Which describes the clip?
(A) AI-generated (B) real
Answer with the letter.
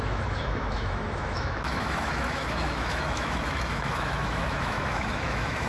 A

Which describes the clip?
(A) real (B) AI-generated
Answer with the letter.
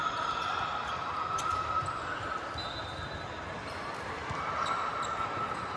A